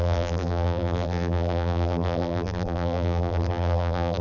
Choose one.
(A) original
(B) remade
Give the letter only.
B